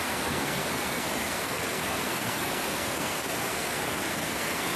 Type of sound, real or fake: fake